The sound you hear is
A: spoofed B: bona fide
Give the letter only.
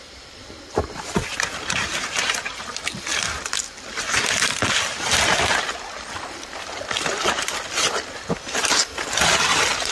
B